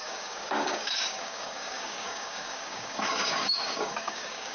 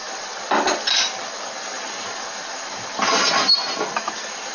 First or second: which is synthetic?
first